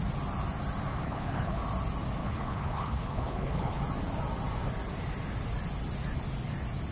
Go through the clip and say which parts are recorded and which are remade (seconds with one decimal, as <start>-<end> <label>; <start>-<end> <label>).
0.0-0.9 recorded; 0.9-1.6 remade; 1.6-2.2 recorded; 2.2-3.8 remade; 3.8-6.9 recorded